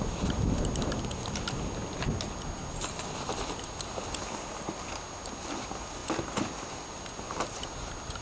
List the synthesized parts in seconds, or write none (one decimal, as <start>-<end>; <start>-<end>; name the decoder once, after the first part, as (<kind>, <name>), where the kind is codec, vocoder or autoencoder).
none